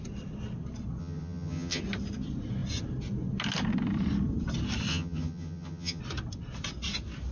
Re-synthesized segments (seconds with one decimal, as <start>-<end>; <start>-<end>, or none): 1.0-1.8; 4.9-6.0